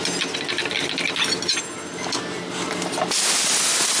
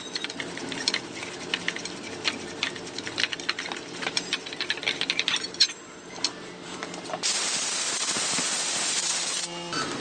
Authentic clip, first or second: first